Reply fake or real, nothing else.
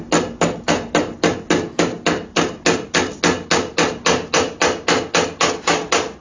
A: real